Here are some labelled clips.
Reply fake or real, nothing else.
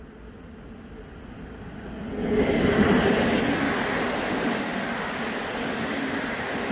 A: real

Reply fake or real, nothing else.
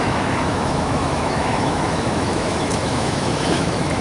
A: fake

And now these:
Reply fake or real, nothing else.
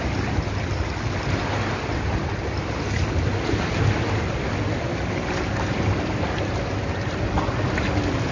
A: real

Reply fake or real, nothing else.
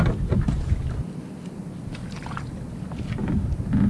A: real